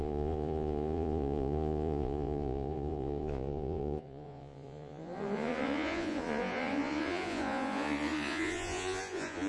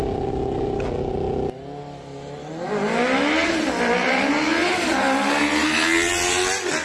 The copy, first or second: first